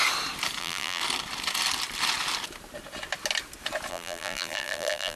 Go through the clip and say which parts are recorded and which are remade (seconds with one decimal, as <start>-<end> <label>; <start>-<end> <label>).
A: 0.0-0.6 recorded; 0.6-1.0 remade; 1.0-3.9 recorded; 3.9-5.2 remade